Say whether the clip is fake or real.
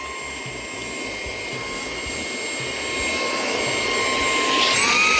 real